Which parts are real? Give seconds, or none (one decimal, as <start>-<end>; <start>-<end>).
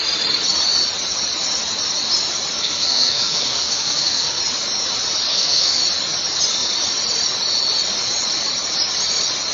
0.0-2.6; 4.4-5.3; 5.8-9.5